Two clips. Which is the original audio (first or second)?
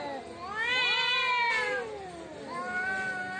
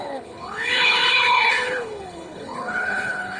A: first